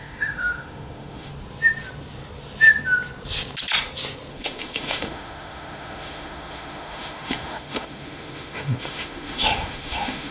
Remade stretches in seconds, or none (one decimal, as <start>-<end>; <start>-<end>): 0.0-1.3; 4.3-10.3